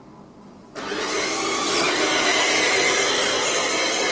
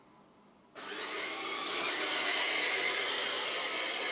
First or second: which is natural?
first